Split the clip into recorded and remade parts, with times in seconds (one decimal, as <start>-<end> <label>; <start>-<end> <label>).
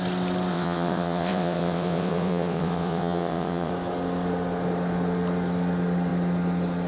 0.0-0.5 recorded; 0.5-3.7 remade; 3.7-6.9 recorded